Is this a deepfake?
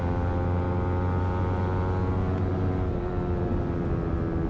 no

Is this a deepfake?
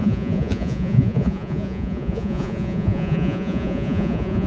yes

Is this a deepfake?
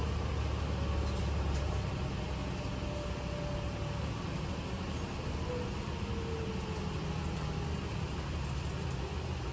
no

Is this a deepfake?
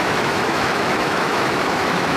yes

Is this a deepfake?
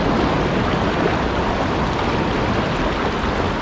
no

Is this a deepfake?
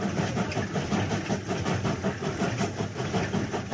no